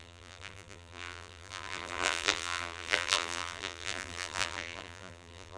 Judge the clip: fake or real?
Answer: fake